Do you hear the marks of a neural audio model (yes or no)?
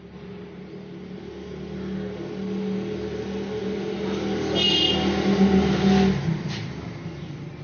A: no